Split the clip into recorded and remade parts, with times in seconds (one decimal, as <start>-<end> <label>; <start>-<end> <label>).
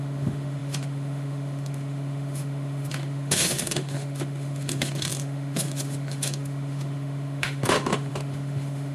0.0-8.9 remade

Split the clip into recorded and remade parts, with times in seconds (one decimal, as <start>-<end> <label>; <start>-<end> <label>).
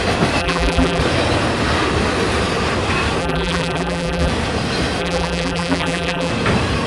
0.0-0.4 recorded; 0.4-1.0 remade; 1.0-3.2 recorded; 3.2-4.3 remade; 4.3-5.0 recorded; 5.0-6.3 remade; 6.3-6.9 recorded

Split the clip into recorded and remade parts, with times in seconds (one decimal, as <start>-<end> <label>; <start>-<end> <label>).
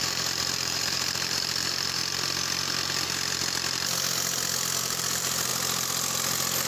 0.0-2.0 remade; 2.0-4.8 recorded; 4.8-5.5 remade; 5.5-6.7 recorded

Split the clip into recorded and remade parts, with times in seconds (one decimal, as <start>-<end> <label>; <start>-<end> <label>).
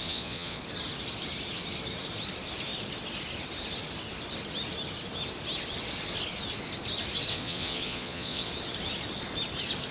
0.0-0.6 remade; 0.6-7.3 recorded; 7.3-8.5 remade; 8.5-9.9 recorded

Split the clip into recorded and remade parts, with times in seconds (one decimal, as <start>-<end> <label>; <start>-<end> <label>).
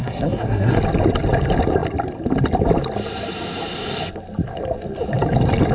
0.0-0.8 remade; 0.8-5.7 recorded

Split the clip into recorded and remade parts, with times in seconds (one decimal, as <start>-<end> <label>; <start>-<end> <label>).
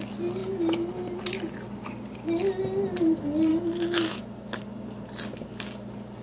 0.0-3.5 recorded; 3.5-4.2 remade; 4.2-6.2 recorded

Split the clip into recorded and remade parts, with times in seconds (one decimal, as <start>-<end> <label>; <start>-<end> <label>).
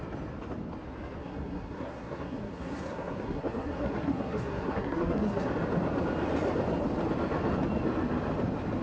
0.0-1.2 recorded; 1.2-5.5 remade; 5.5-8.8 recorded